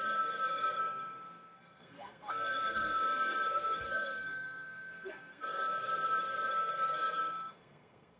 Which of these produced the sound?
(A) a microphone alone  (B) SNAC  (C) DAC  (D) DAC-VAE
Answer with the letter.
B